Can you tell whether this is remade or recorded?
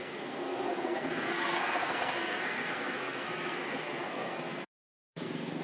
remade